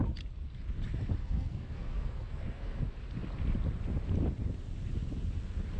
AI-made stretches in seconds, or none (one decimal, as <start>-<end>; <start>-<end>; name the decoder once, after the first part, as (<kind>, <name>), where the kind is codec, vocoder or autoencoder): 1.2-2.8 (codec, SNAC)